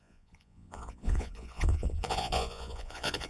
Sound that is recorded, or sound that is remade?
remade